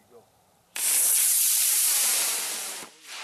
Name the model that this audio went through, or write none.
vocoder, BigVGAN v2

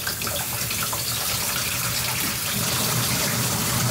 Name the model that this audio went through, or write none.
vocoder, BigVGAN v2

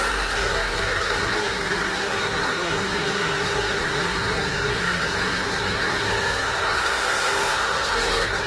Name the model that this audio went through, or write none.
codec, SNAC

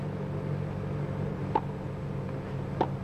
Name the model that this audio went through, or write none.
none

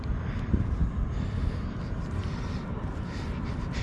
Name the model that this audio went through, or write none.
none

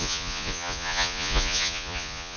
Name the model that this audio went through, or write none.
vocoder, Vocos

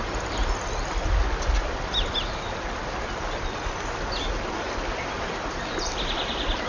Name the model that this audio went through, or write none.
none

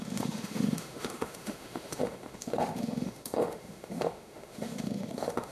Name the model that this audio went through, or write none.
autoencoder, DAC-VAE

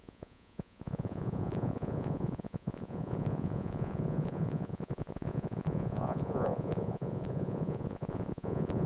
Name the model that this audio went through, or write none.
vocoder, Vocos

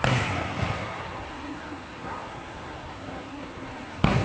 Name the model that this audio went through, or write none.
codec, SNAC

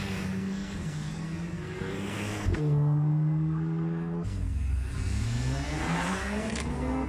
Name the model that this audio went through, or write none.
codec, SNAC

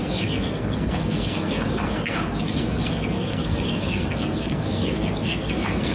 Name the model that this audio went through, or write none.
codec, SNAC